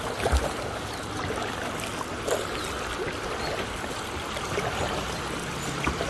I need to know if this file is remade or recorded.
recorded